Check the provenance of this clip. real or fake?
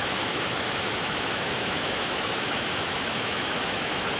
fake